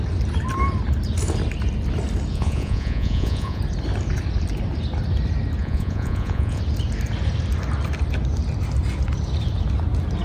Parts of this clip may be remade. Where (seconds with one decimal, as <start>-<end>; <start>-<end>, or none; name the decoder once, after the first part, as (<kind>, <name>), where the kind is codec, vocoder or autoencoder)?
2.3-3.6 (vocoder, Vocos); 5.6-6.6